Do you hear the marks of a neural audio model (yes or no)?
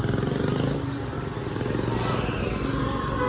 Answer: no